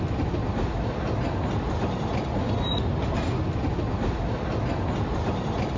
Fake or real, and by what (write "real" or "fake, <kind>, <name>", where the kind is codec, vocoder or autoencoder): real